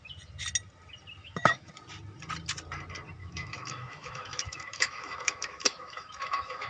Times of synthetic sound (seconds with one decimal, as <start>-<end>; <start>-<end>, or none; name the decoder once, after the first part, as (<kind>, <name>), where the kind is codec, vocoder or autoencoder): 1.2-1.7 (autoencoder, DAC-VAE); 3.2-6.7

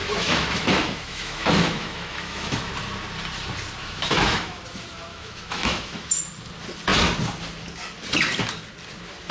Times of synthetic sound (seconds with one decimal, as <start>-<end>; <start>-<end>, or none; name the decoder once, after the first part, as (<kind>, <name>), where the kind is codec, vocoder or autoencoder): 0.0-2.7 (autoencoder, DAC-VAE); 3.8-4.6; 5.1-6.1

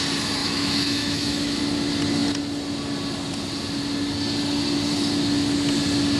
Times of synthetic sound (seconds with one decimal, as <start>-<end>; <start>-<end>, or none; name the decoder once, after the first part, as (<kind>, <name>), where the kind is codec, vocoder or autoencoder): 0.4-1.6 (autoencoder, DAC-VAE)